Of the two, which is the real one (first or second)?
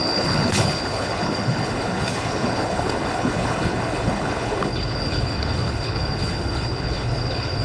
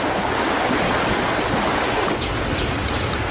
second